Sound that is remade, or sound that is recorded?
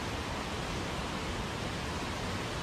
recorded